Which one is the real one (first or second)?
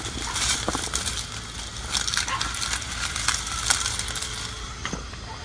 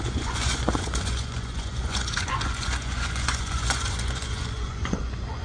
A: first